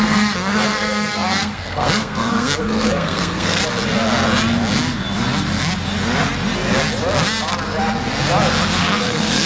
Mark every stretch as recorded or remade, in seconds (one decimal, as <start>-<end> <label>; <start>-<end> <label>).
0.0-3.6 remade; 3.6-8.8 recorded; 8.8-9.5 remade